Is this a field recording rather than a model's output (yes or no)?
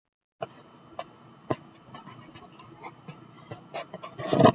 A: yes